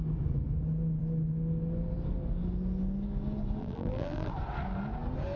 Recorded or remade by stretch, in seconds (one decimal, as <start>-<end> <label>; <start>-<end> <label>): 0.0-3.6 recorded; 3.6-4.3 remade; 4.3-5.4 recorded